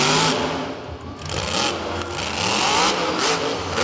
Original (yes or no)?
yes